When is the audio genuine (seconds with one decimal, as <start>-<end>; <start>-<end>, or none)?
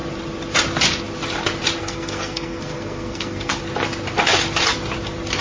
0.0-1.8; 3.6-5.4